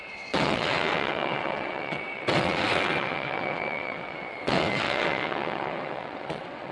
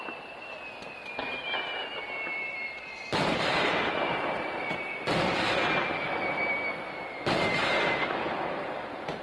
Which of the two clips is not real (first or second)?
first